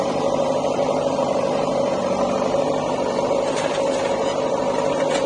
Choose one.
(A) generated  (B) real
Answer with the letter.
B